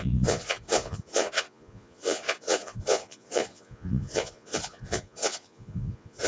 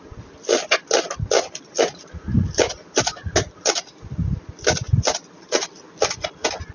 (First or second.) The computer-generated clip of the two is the first